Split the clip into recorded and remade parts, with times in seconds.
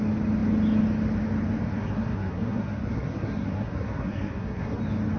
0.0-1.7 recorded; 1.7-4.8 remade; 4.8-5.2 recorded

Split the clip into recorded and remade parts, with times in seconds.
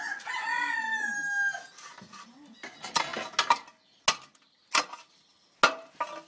0.0-6.3 recorded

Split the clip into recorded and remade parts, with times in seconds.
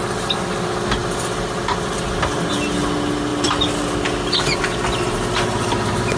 0.0-6.2 recorded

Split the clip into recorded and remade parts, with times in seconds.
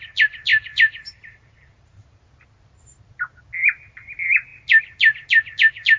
0.0-0.5 recorded; 0.5-2.3 remade; 2.3-6.0 recorded